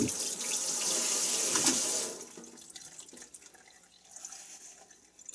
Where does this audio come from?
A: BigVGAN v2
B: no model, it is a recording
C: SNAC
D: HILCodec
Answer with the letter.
B